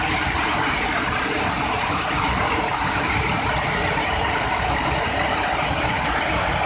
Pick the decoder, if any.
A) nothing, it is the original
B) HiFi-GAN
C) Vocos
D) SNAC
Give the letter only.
A